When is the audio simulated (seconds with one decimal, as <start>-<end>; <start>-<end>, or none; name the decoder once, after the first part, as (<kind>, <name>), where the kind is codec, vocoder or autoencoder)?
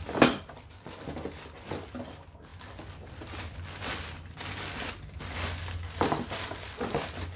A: none